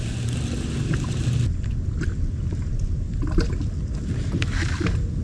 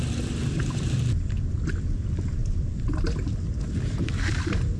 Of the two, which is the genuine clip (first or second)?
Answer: first